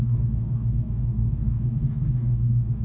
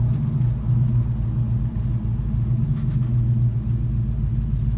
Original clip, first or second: second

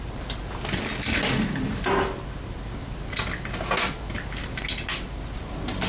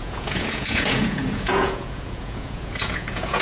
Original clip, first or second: first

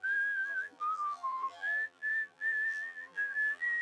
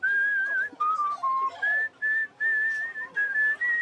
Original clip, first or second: second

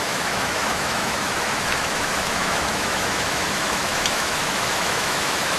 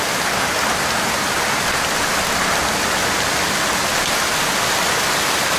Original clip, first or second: second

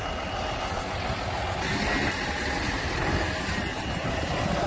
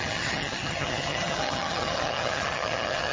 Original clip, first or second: first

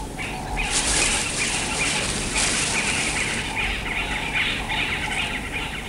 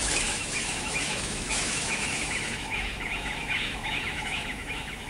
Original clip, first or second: first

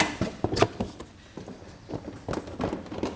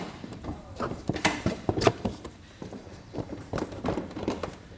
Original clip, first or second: first